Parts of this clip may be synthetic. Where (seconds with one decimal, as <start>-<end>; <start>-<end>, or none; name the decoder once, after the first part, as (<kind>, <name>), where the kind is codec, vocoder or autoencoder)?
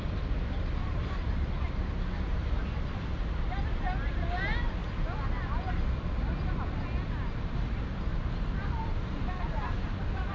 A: none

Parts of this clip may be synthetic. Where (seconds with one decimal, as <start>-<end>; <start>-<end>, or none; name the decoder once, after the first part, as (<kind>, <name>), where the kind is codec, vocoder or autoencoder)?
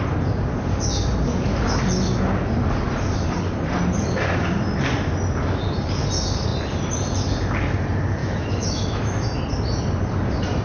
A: 8.2-9.4 (autoencoder, DAC-VAE)